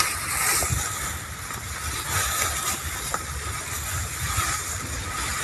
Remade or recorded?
recorded